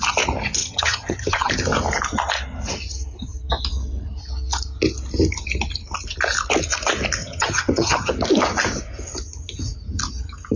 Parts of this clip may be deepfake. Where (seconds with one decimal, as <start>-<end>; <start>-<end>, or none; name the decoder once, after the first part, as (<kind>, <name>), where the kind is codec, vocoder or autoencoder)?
0.6-1.5 (vocoder, HiFi-GAN); 7.2-8.1